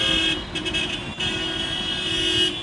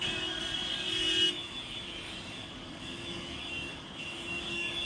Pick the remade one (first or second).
second